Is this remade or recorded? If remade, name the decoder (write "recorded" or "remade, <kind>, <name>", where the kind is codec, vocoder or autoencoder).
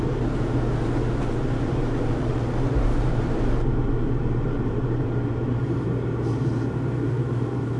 remade, vocoder, BigVGAN v2